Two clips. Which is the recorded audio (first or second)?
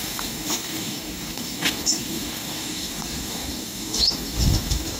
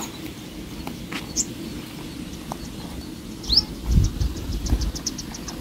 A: second